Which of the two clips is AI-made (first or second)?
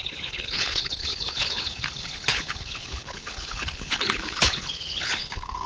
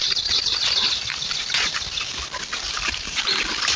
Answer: first